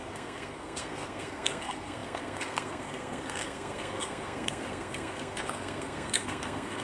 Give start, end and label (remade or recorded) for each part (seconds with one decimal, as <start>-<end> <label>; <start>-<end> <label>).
0.0-6.8 remade